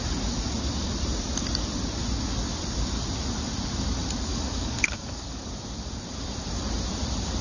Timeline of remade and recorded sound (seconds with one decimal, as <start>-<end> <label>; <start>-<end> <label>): 0.0-4.3 recorded; 4.3-5.5 remade; 5.5-7.4 recorded